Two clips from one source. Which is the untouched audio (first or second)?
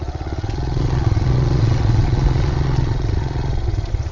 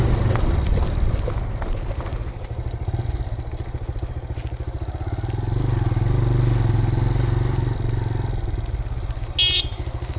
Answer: second